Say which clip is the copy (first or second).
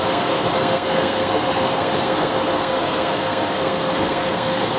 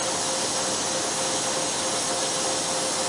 first